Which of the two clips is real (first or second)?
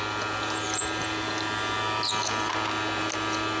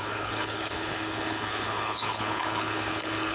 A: first